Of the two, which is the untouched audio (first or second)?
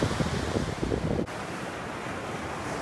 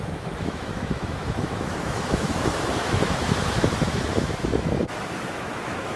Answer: first